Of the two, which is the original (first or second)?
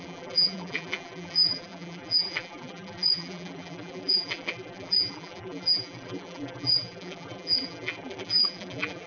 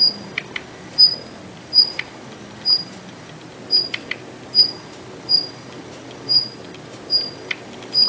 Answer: second